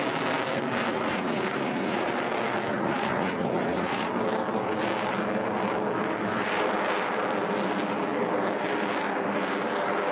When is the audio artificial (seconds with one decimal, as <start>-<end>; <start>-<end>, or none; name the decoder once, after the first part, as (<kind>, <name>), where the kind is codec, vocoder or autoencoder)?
0.9-2.1 (vocoder, Vocos); 2.7-4.1